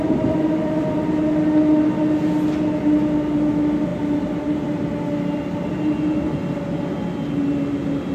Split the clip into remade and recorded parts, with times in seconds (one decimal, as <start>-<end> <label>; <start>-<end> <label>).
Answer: 0.0-8.1 recorded